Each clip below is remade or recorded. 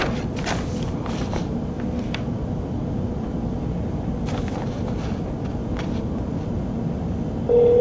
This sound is recorded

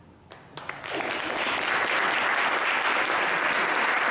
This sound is recorded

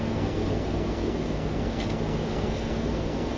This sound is remade